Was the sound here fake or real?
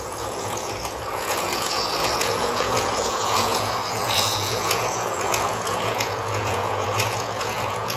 fake